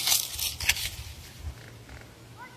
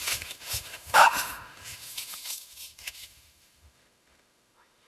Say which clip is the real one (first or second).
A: first